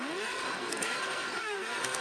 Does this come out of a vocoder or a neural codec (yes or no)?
yes